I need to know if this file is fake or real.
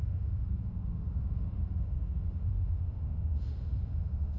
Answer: fake